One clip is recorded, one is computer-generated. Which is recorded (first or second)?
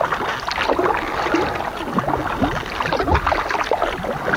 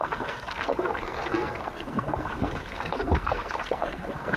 first